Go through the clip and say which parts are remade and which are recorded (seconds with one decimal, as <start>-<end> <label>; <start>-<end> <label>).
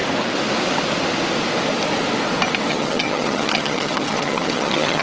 0.0-2.7 recorded; 2.7-5.0 remade